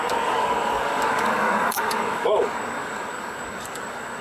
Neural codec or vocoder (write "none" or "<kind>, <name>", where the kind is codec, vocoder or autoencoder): codec, DAC